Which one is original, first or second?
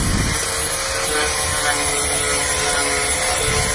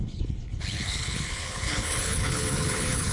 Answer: first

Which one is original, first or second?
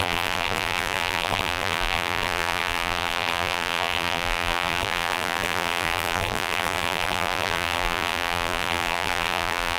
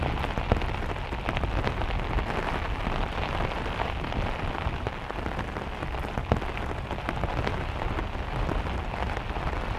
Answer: second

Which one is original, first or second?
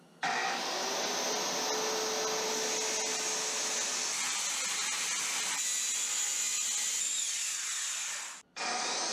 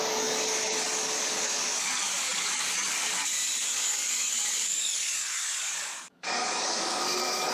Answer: first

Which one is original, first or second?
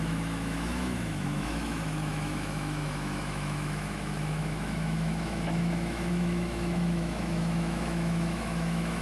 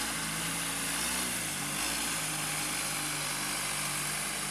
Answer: second